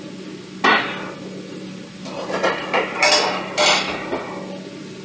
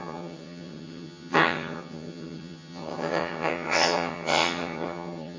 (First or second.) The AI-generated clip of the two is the second